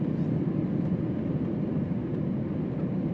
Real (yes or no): yes